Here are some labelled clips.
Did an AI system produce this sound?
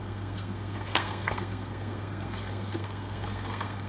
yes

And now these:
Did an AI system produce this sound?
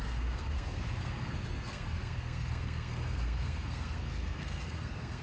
yes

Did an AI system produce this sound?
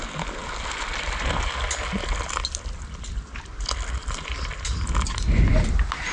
no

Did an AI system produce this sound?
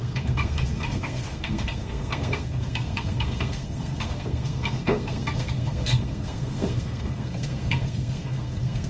yes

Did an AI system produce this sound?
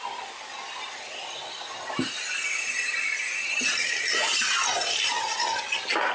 no